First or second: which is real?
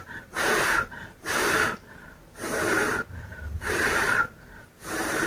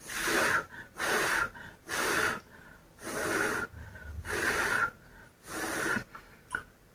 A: second